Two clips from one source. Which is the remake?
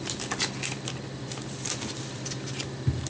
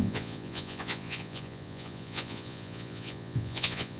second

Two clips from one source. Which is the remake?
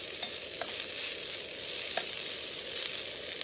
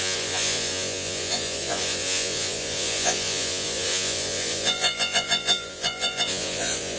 second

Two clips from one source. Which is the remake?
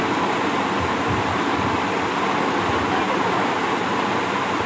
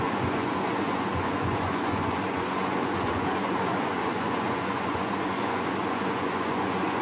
second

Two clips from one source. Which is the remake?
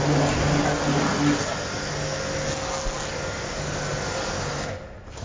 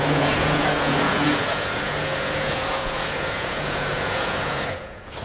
second